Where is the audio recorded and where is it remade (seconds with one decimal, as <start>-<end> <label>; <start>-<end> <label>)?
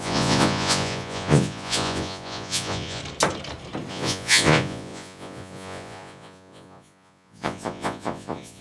0.0-3.0 remade; 3.0-3.9 recorded; 3.9-8.6 remade